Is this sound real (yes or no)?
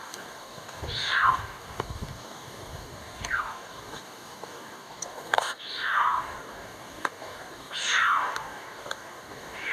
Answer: no